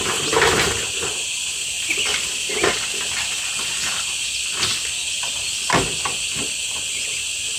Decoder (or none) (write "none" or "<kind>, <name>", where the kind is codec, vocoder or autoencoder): none